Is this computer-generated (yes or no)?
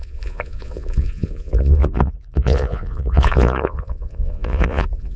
yes